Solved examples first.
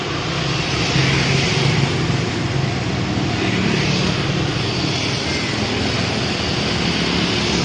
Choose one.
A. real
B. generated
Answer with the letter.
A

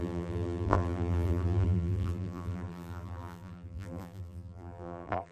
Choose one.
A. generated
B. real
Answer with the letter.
A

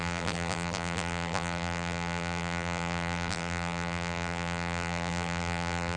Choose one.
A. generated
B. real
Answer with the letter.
A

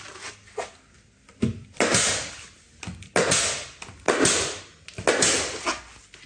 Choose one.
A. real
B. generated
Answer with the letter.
A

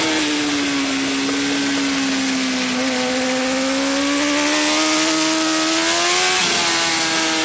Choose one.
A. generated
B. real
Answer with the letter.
B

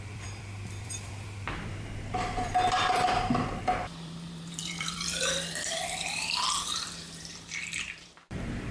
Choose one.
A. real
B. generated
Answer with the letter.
B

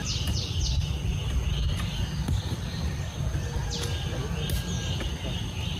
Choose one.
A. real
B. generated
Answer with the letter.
A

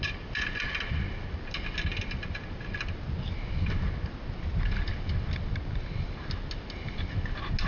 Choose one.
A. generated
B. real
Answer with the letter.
B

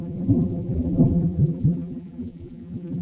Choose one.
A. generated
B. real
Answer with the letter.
A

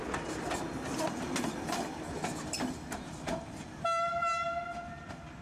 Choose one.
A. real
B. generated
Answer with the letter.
A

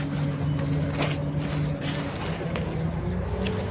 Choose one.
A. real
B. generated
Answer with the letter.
A